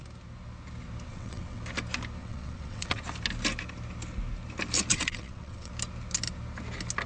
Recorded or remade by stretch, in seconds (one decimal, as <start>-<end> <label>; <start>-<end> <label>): 0.0-1.1 recorded; 1.1-1.6 remade; 1.6-2.2 recorded; 2.2-3.0 remade; 3.0-4.9 recorded; 4.9-5.7 remade; 5.7-7.1 recorded